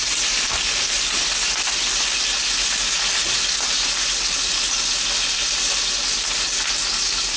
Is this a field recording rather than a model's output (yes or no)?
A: yes